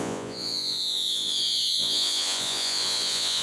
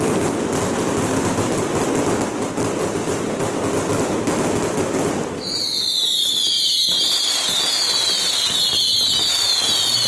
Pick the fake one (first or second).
first